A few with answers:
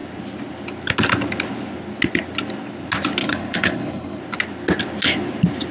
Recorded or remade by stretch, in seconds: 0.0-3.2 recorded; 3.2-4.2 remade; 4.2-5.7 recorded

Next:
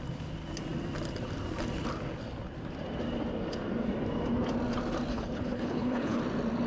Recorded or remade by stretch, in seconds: 0.0-5.1 recorded; 5.1-6.2 remade; 6.2-6.7 recorded